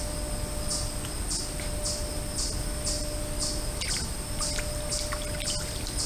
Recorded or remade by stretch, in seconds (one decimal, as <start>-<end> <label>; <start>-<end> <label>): 0.0-6.1 recorded